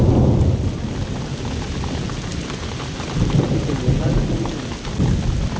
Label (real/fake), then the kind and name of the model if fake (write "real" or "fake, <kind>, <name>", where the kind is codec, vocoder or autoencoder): real